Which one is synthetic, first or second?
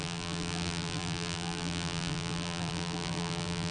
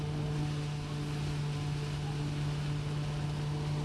first